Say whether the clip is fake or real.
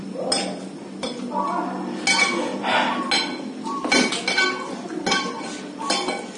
real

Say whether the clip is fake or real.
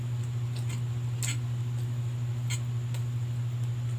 real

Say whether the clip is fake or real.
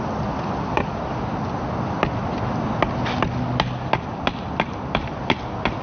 real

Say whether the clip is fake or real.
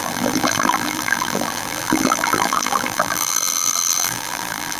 fake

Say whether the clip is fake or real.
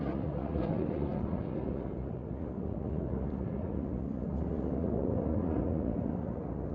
fake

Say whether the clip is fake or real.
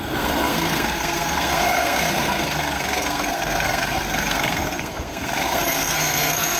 fake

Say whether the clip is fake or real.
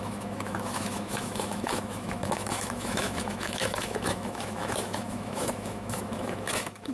fake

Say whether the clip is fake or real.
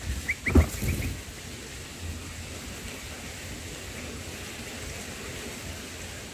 real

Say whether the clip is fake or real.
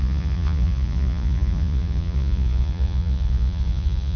fake